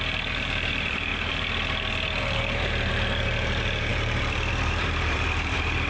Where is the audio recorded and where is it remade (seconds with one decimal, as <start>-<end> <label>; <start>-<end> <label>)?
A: 0.0-1.1 remade; 1.1-2.2 recorded; 2.2-5.9 remade